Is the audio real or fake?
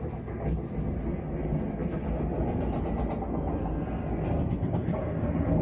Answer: real